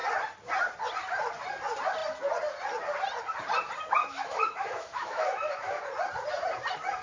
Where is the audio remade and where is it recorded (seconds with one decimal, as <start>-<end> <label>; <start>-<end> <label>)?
0.0-4.0 recorded; 4.0-5.8 remade; 5.8-7.0 recorded